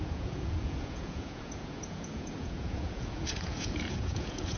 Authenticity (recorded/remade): remade